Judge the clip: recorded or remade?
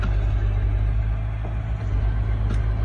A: recorded